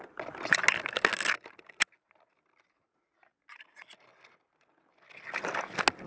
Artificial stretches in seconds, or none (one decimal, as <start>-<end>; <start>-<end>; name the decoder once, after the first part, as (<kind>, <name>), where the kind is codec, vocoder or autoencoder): none